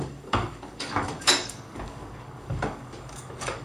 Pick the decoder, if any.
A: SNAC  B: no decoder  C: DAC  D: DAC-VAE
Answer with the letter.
C